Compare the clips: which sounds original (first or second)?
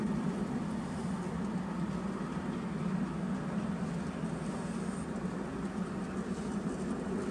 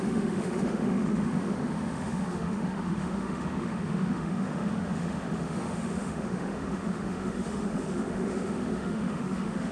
first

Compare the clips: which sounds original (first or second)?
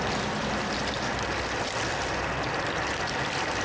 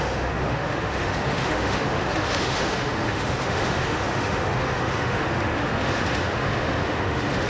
first